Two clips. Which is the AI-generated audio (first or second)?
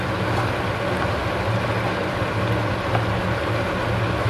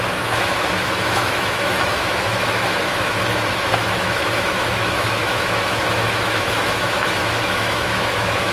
second